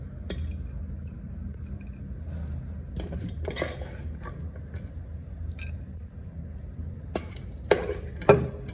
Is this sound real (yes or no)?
yes